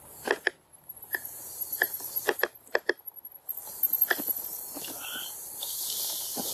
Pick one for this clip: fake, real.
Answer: real